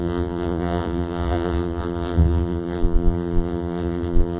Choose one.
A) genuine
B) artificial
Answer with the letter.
B